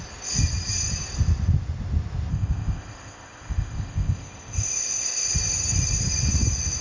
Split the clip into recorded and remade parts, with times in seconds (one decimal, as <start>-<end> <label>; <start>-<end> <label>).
0.0-2.3 recorded; 2.3-5.3 remade; 5.3-6.8 recorded